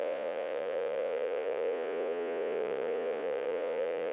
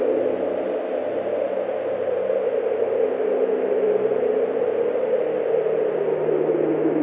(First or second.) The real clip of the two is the second